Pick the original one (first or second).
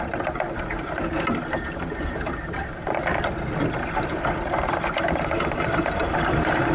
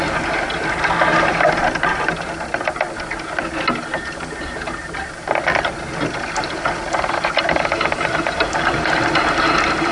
second